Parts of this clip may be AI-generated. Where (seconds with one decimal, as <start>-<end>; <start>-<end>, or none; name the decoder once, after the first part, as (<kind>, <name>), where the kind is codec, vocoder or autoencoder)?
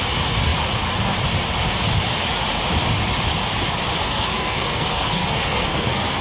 3.9-6.2 (codec, SNAC)